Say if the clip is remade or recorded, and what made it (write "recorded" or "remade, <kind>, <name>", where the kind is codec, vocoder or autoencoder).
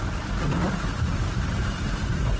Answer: recorded